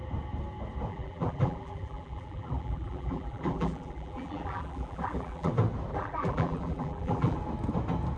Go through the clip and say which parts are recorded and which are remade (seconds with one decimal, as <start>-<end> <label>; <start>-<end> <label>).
0.0-0.9 recorded; 0.9-5.5 remade; 5.5-5.9 recorded; 5.9-7.4 remade; 7.4-8.2 recorded